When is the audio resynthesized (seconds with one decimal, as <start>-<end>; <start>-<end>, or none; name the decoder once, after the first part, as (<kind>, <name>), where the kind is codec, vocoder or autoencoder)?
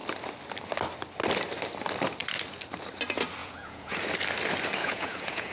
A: 3.4-4.0 (vocoder, Vocos); 4.8-5.5